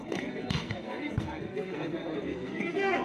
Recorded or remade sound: remade